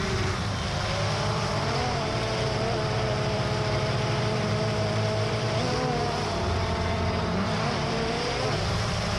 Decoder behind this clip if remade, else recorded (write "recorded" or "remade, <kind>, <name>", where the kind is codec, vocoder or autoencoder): remade, vocoder, BigVGAN v2